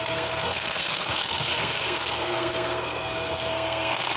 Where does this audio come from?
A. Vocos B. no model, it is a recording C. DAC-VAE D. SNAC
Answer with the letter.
D